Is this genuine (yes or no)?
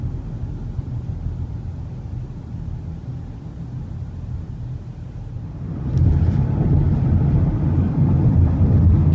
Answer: yes